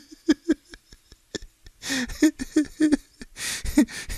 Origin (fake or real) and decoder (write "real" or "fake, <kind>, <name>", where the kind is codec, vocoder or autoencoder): real